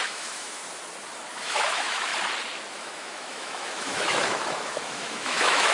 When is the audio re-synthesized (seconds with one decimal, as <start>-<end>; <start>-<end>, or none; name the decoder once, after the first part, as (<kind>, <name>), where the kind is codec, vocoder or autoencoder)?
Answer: 0.0-0.6 (autoencoder, DAC-VAE); 1.3-2.1; 2.7-5.7